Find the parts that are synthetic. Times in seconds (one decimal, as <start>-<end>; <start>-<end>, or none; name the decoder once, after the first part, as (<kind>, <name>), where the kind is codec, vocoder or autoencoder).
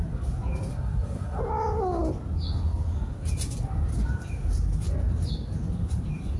0.7-1.4 (codec, SNAC)